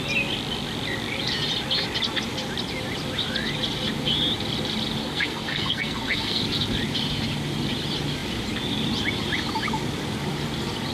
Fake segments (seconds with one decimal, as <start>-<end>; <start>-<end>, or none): 5.0-6.4